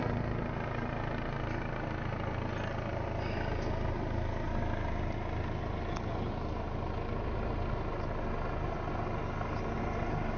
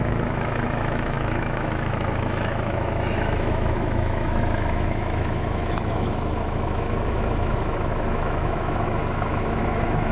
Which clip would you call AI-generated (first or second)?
second